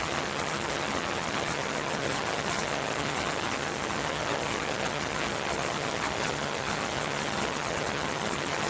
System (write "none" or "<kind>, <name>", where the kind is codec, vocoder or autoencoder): vocoder, HiFi-GAN